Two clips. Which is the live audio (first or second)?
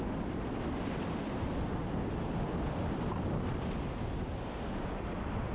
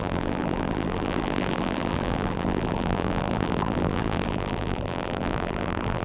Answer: first